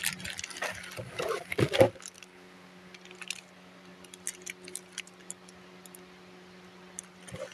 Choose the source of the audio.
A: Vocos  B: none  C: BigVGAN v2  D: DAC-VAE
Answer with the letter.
B